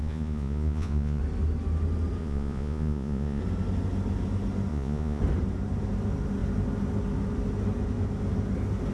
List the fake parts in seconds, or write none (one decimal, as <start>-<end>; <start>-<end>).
0.0-1.2; 2.2-3.4; 4.7-5.2